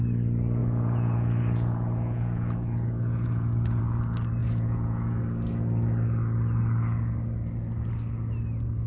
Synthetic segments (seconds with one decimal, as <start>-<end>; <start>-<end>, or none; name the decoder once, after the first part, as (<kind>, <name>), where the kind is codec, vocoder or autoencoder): 0.6-3.8 (vocoder, Vocos); 4.4-5.2